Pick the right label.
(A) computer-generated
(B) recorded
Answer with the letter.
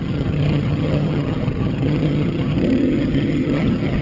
A